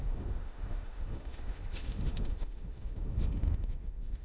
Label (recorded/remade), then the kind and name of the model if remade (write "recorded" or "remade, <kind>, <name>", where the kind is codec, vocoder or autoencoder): remade, autoencoder, DAC-VAE